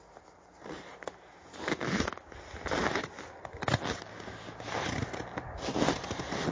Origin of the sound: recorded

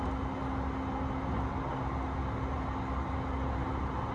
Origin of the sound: recorded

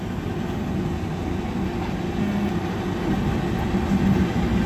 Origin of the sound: recorded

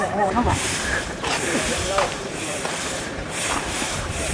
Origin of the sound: remade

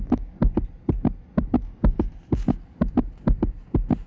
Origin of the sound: recorded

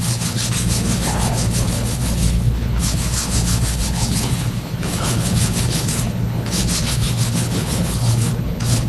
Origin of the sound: remade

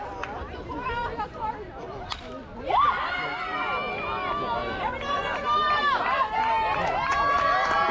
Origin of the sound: recorded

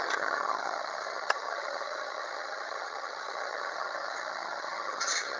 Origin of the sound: remade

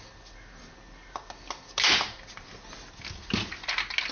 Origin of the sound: recorded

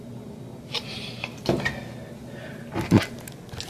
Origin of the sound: recorded